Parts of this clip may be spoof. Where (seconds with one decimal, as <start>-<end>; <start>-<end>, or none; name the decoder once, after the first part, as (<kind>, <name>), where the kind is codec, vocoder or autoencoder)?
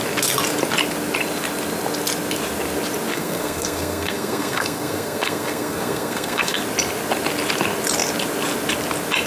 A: 3.1-6.6 (codec, SNAC)